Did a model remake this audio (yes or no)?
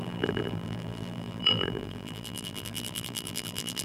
yes